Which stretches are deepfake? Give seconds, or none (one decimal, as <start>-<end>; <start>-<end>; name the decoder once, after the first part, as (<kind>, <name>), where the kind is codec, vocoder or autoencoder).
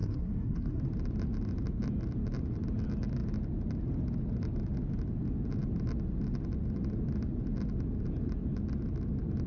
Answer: 0.0-0.8 (codec, SNAC)